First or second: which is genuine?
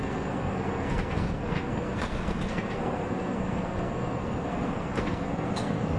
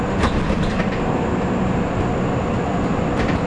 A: second